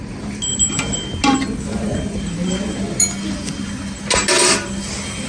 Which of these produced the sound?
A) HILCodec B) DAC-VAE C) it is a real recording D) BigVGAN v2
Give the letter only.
C